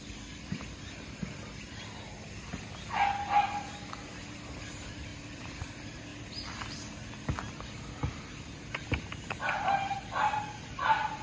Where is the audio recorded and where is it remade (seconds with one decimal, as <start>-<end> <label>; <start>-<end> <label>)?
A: 0.0-5.1 recorded; 5.1-5.6 remade; 5.6-11.2 recorded